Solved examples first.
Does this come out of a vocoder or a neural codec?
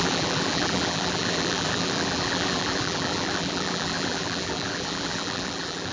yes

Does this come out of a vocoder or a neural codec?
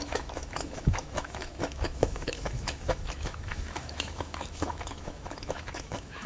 yes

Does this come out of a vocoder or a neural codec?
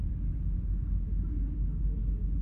no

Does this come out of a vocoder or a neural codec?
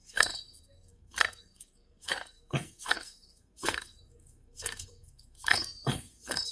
yes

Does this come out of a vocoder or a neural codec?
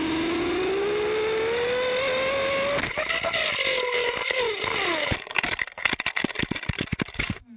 no